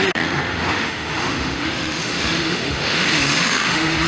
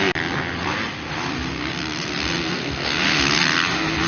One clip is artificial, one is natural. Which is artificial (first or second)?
first